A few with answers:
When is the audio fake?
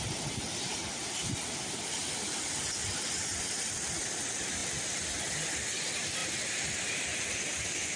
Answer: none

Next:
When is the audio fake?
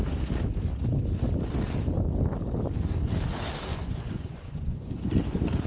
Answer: 3.7-4.9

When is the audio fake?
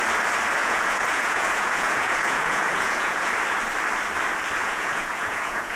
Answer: 0.6-3.3; 4.6-5.8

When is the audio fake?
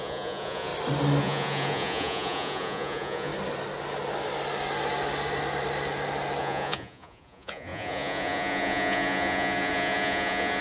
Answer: 0.0-0.7; 1.2-3.3; 6.4-10.6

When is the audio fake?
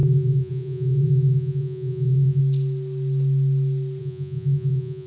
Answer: 0.0-2.4; 4.0-5.1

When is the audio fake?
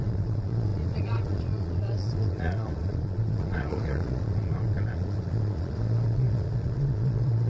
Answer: 0.0-7.5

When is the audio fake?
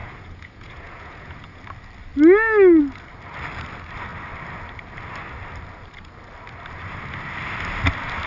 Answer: 0.0-1.6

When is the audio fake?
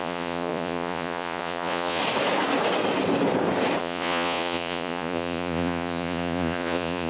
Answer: 0.0-2.0; 3.8-7.1